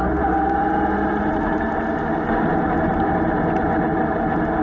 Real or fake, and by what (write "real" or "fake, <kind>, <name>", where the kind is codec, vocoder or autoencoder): real